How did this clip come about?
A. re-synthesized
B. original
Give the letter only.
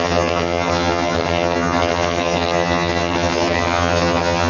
A